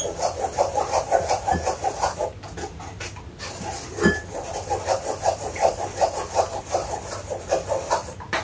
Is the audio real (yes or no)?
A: yes